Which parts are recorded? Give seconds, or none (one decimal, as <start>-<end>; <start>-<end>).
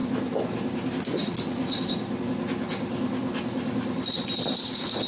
0.0-5.1